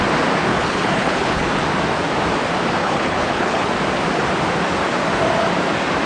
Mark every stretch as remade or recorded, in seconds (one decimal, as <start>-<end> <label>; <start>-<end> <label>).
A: 0.0-0.5 recorded; 0.5-1.5 remade; 1.5-2.8 recorded; 2.8-3.7 remade; 3.7-6.1 recorded